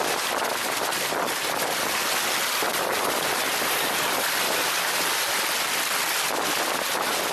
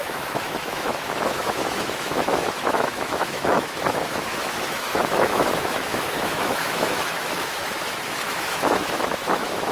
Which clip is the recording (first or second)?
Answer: first